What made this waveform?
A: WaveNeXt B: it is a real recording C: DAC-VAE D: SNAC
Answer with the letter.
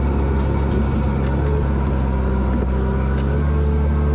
B